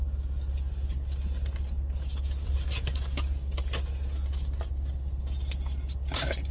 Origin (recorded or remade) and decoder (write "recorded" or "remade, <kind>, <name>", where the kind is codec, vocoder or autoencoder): recorded